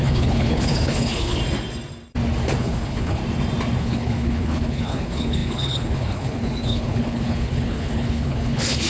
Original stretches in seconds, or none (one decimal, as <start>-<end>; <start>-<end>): 1.4-2.6; 3.2-3.8